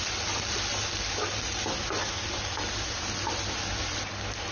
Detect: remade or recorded recorded